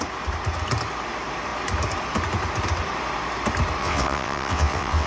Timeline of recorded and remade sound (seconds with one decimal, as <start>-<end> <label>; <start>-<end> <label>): 0.0-3.8 recorded; 3.8-5.1 remade